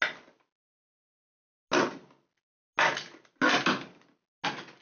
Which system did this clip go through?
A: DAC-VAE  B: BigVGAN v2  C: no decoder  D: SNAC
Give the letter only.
C